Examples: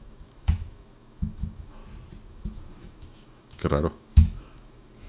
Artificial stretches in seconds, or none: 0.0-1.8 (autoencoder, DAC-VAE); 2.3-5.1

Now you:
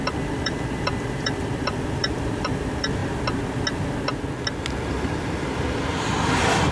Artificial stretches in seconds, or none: 0.0-3.0 (vocoder, BigVGAN v2); 5.2-6.7

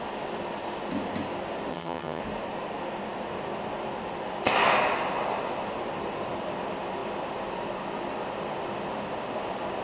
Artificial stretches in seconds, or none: 1.7-2.2 (vocoder, HiFi-GAN)